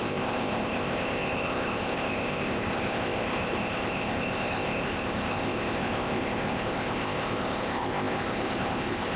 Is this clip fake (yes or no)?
yes